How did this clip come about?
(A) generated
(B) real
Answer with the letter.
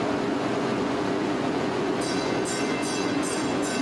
A